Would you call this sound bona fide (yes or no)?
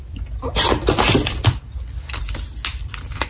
yes